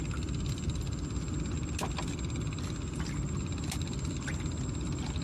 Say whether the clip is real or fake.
real